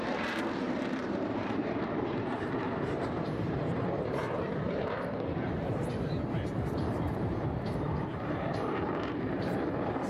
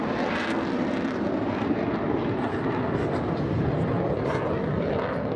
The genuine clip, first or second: second